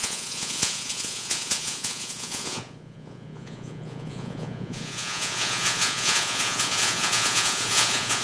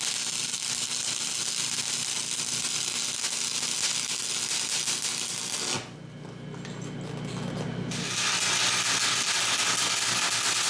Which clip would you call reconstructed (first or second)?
first